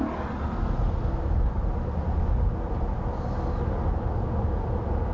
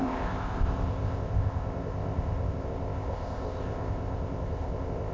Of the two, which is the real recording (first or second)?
first